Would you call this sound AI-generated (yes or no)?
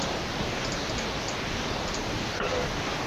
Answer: no